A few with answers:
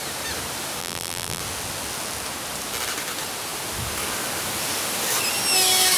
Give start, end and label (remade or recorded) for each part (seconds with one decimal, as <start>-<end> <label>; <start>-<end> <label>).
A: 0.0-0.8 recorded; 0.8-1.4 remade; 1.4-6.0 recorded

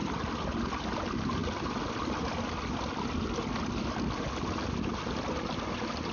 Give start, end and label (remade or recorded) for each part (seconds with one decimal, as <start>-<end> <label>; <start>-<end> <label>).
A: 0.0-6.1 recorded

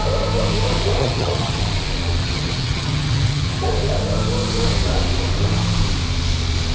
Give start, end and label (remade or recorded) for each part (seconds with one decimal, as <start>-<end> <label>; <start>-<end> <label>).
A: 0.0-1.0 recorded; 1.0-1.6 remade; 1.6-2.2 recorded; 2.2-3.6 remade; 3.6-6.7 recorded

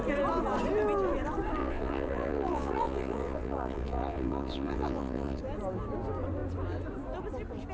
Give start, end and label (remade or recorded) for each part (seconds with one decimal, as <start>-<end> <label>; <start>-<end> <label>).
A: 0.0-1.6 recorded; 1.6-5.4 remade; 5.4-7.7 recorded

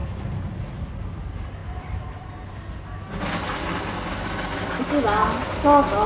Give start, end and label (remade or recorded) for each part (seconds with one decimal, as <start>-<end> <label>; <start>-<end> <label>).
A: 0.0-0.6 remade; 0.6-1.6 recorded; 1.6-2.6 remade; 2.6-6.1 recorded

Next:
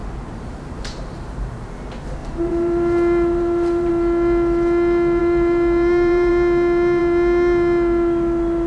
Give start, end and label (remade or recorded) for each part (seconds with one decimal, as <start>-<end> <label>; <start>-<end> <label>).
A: 0.0-1.7 remade; 1.7-2.2 recorded; 2.2-3.9 remade; 3.9-5.2 recorded; 5.2-6.3 remade; 6.3-8.7 recorded

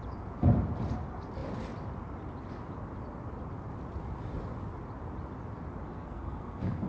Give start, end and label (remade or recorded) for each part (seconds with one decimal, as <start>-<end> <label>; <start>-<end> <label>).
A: 0.0-5.9 recorded; 5.9-6.9 remade

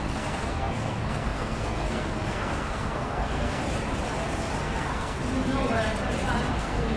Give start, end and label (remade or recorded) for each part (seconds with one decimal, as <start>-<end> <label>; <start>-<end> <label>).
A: 0.0-3.6 remade; 3.6-4.6 recorded; 4.6-5.2 remade; 5.2-6.5 recorded; 6.5-7.0 remade